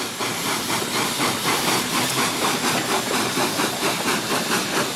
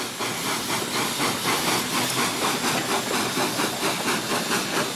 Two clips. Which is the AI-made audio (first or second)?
first